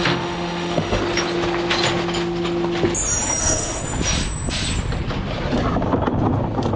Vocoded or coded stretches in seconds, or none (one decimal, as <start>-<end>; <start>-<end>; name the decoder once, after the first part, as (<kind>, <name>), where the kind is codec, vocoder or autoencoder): 0.0-1.0 (autoencoder, DAC-VAE); 3.4-3.8